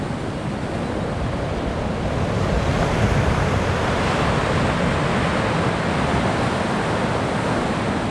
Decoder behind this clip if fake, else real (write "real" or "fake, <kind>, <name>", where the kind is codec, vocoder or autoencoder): real